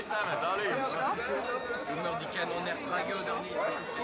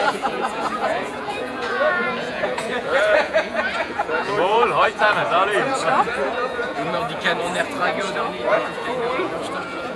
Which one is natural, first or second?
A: first